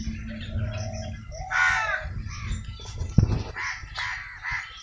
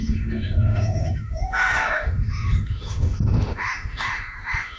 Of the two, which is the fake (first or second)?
second